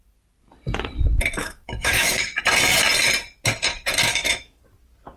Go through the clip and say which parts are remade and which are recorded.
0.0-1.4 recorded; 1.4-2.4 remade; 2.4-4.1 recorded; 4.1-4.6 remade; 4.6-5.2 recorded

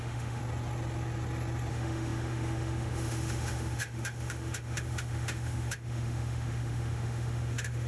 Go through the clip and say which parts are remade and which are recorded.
0.0-0.4 remade; 0.4-1.7 recorded; 1.7-7.9 remade

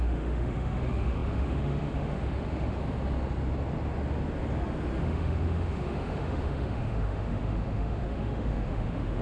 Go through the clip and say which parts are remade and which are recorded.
0.0-2.8 remade; 2.8-5.0 recorded; 5.0-9.2 remade